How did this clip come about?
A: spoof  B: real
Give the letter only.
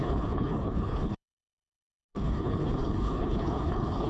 A